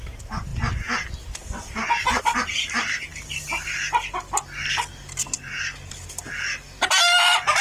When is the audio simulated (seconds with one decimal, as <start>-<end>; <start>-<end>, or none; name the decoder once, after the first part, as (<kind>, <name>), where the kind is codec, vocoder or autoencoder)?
none